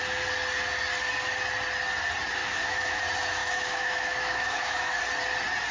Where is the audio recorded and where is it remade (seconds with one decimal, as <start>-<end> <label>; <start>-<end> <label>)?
0.0-2.4 recorded; 2.4-3.0 remade; 3.0-3.4 recorded; 3.4-5.0 remade; 5.0-5.7 recorded